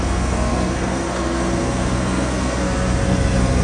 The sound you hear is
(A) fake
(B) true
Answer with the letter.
A